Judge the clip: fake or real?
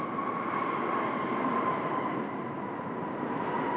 real